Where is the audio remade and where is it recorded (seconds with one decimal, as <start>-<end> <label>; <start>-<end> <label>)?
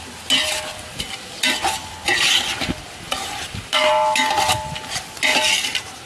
0.0-3.2 recorded; 3.2-3.9 remade; 3.9-6.1 recorded